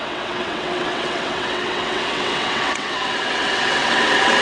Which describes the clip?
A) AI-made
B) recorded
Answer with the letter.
A